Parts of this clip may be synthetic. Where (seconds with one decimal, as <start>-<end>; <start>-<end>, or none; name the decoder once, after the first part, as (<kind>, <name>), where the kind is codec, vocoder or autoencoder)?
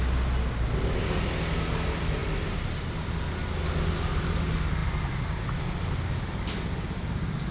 none